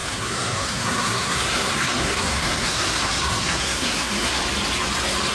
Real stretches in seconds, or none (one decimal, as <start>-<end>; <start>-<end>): 4.4-5.3